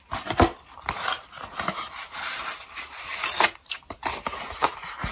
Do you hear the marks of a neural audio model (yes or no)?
no